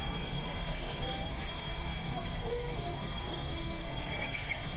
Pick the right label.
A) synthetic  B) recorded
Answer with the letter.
A